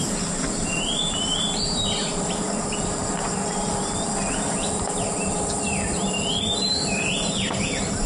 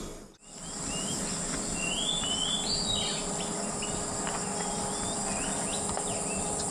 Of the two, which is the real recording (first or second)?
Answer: second